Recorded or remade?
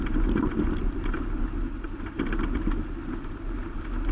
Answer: recorded